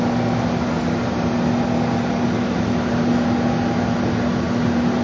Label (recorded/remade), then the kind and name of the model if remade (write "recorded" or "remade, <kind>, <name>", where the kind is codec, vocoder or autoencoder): recorded